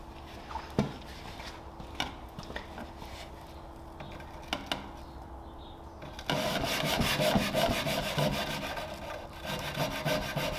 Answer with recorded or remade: recorded